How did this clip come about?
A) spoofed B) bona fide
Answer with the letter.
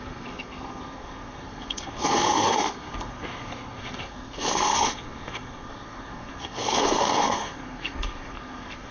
A